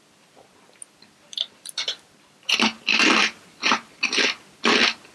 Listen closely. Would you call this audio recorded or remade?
remade